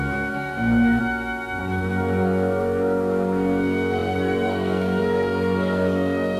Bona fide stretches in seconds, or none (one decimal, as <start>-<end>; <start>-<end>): 1.0-1.6